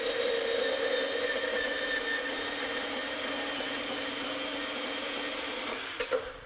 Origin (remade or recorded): recorded